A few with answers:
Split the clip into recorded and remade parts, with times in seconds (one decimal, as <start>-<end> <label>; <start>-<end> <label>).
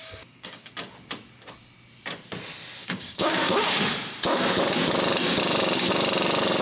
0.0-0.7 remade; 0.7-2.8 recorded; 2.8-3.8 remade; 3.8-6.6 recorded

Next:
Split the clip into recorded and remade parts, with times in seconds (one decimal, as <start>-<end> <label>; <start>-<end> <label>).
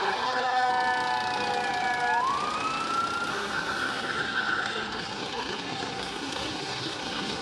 0.0-0.7 remade; 0.7-3.3 recorded; 3.3-7.4 remade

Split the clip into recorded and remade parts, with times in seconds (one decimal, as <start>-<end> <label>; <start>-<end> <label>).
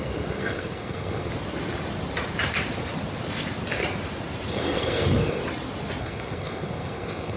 0.0-1.3 remade; 1.3-4.5 recorded; 4.5-5.4 remade; 5.4-6.0 recorded; 6.0-7.4 remade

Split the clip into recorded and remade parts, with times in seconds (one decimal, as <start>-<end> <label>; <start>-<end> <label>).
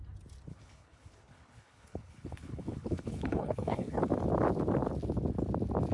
0.0-0.5 recorded; 0.5-4.0 remade; 4.0-5.9 recorded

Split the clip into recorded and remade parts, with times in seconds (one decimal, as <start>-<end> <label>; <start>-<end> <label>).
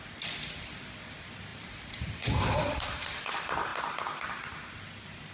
0.0-1.5 recorded; 1.5-3.2 remade; 3.2-5.3 recorded